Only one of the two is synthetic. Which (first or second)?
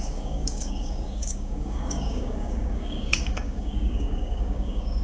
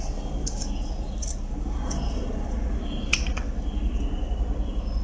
first